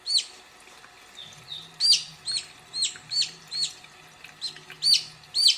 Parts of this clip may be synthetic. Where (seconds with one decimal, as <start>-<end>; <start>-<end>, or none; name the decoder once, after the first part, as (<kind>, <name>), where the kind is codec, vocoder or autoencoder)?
none